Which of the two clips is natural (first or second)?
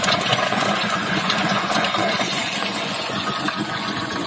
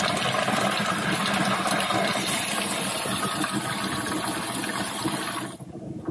second